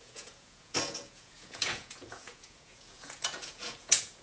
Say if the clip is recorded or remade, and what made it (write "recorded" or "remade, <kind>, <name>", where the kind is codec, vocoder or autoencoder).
remade, vocoder, Vocos